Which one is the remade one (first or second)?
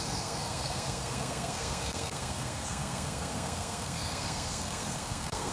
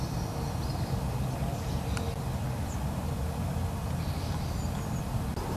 first